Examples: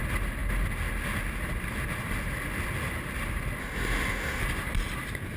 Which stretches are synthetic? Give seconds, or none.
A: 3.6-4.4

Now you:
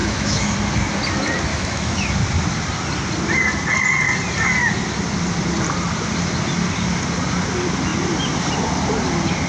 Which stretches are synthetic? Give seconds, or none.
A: 0.0-0.5; 1.5-2.1

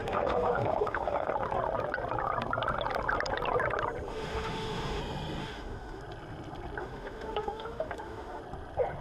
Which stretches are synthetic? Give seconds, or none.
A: 0.0-1.3; 4.1-5.0; 5.4-6.0; 6.8-8.4

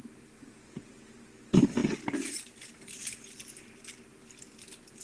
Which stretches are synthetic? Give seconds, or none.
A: none

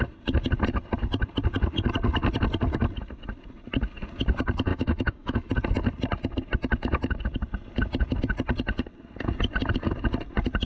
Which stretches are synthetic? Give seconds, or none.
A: 4.7-5.5

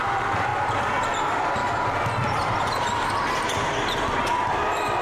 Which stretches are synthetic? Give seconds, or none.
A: none

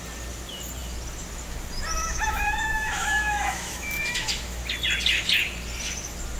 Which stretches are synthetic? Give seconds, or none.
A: 2.0-4.6

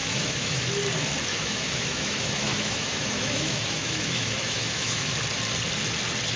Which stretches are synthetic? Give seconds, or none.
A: 0.0-0.6; 1.3-5.1